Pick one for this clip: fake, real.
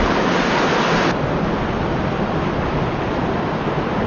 real